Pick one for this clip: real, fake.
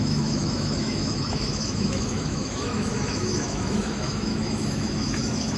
fake